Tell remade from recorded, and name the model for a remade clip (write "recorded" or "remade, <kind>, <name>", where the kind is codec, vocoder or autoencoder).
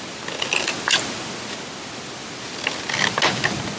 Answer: recorded